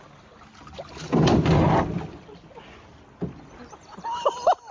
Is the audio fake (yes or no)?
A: no